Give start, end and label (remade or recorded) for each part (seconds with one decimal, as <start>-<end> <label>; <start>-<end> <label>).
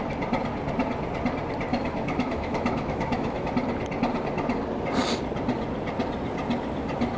0.0-1.7 recorded; 1.7-3.5 remade; 3.5-7.2 recorded